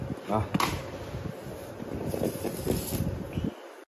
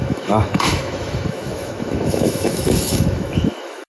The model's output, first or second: second